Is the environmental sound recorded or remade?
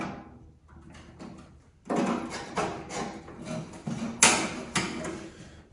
recorded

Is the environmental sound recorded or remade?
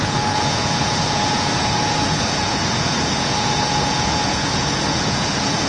remade